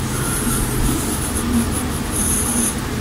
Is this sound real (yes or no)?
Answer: yes